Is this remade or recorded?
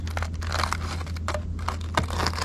recorded